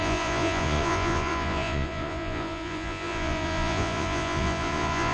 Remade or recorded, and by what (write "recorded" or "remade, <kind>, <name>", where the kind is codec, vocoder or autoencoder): remade, vocoder, Vocos